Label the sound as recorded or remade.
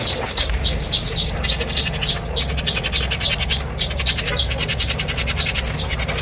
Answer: recorded